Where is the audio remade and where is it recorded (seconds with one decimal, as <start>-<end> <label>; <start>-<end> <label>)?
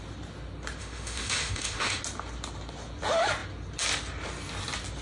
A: 0.0-0.8 recorded; 0.8-2.0 remade; 2.0-5.0 recorded